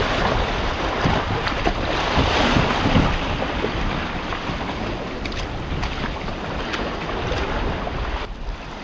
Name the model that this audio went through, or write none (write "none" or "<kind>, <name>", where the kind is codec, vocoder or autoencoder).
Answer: vocoder, BigVGAN v2